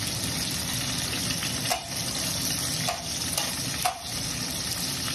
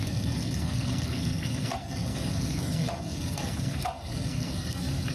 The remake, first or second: second